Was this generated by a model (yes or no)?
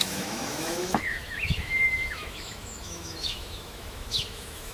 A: yes